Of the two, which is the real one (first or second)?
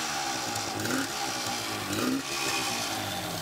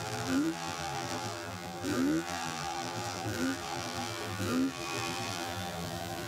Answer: first